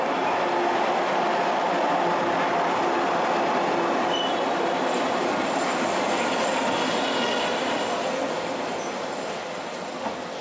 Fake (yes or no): no